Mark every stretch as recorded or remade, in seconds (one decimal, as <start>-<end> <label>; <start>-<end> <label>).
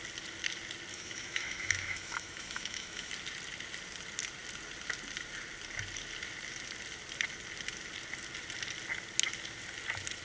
0.0-0.9 recorded; 0.9-3.1 remade; 3.1-10.2 recorded